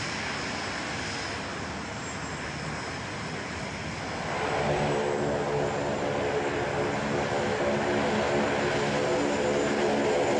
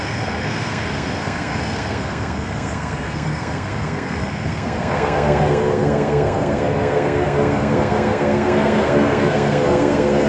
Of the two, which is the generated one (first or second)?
second